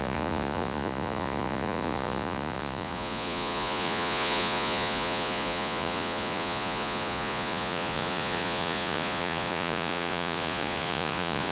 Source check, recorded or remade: remade